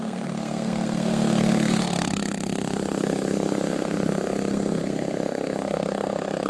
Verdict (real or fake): fake